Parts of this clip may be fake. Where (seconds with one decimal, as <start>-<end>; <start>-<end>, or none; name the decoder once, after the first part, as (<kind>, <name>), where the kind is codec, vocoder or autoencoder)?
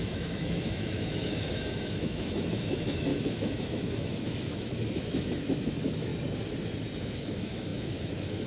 0.0-6.1 (autoencoder, DAC-VAE); 7.0-8.5